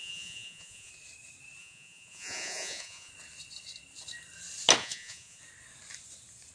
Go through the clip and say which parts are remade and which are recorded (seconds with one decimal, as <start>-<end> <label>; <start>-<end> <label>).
0.0-0.9 remade; 0.9-1.6 recorded; 1.6-3.1 remade; 3.1-4.8 recorded; 4.8-5.4 remade; 5.4-6.5 recorded